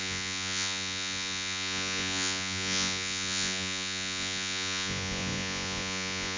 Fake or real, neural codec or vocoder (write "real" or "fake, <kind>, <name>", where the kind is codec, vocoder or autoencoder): fake, vocoder, Vocos